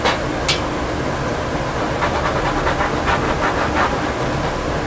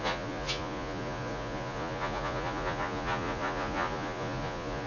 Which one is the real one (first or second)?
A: first